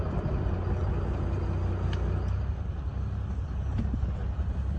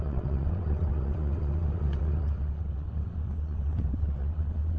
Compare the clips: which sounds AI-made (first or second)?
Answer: second